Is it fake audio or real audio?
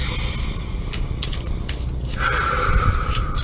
real